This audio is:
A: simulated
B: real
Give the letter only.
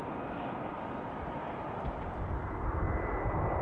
B